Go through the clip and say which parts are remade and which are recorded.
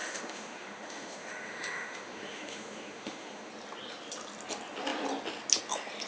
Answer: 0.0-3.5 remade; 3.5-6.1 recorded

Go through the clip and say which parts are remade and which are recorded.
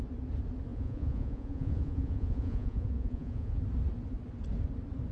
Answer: 0.0-0.7 recorded; 0.7-3.6 remade; 3.6-5.1 recorded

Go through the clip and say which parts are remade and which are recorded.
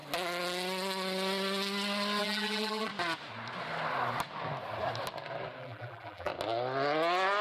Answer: 0.0-2.2 recorded; 2.2-2.9 remade; 2.9-5.6 recorded; 5.6-6.3 remade; 6.3-7.4 recorded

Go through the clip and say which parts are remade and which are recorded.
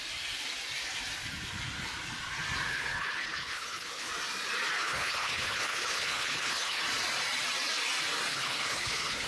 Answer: 0.0-2.7 recorded; 2.7-4.1 remade; 4.1-4.8 recorded; 4.8-6.8 remade; 6.8-8.3 recorded; 8.3-9.3 remade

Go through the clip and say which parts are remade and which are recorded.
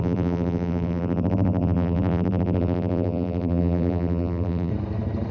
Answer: 0.0-4.7 remade; 4.7-5.3 recorded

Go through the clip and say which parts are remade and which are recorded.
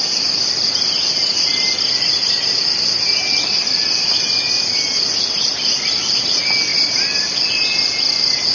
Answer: 0.0-8.5 recorded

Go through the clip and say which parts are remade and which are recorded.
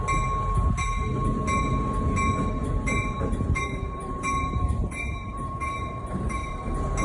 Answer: 0.0-2.6 recorded; 2.6-6.5 remade; 6.5-7.0 recorded